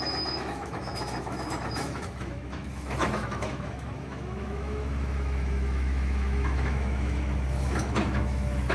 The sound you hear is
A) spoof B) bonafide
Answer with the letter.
A